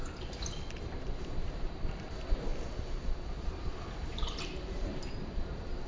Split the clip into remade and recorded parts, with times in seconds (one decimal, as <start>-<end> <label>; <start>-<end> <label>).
0.0-0.8 recorded; 0.8-2.5 remade; 2.5-3.3 recorded; 3.3-5.9 remade